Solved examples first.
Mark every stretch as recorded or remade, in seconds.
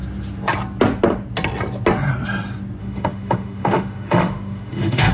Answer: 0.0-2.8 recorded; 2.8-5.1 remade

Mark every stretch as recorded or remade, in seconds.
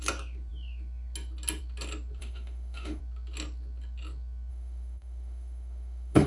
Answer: 0.0-2.2 recorded; 2.2-3.0 remade; 3.0-4.5 recorded; 4.5-6.3 remade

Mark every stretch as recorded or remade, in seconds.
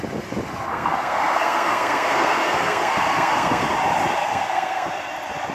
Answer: 0.0-0.7 recorded; 0.7-3.6 remade; 3.6-4.2 recorded; 4.2-4.9 remade; 4.9-5.5 recorded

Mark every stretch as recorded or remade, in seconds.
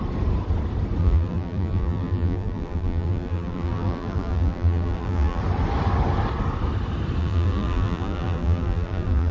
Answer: 0.0-1.0 recorded; 1.0-5.4 remade; 5.4-7.2 recorded; 7.2-9.3 remade